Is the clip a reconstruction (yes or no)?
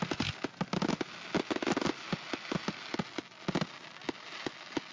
no